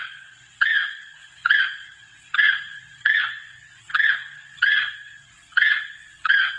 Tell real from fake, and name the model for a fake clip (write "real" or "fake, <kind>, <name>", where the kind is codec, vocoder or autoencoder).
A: fake, vocoder, WaveNeXt